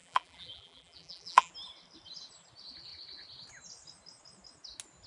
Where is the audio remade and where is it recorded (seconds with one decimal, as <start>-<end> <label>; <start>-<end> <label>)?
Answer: 0.0-1.5 remade; 1.5-5.1 recorded